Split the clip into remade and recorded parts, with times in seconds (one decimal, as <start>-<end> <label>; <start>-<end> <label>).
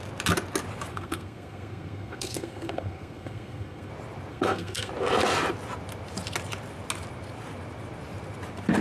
0.0-0.9 recorded; 0.9-3.9 remade; 3.9-4.3 recorded; 4.3-4.9 remade; 4.9-8.8 recorded